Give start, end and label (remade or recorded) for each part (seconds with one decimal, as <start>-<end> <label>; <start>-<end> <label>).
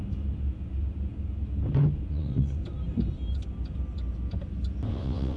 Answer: 0.0-2.1 recorded; 2.1-2.6 remade; 2.6-4.9 recorded; 4.9-5.4 remade